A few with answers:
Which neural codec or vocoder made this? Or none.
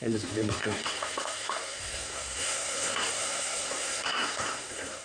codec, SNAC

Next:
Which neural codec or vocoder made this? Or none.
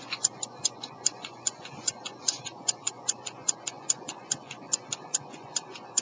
vocoder, Vocos